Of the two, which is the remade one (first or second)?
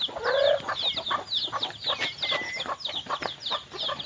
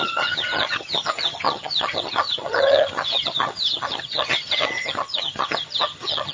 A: second